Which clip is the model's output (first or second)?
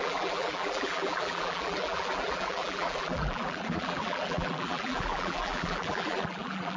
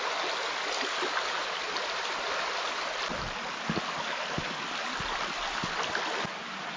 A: first